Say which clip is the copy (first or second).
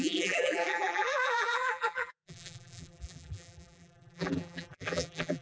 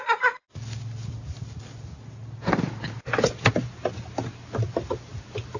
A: first